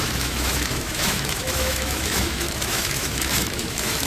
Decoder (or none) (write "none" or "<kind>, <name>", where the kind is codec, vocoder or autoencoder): autoencoder, DAC-VAE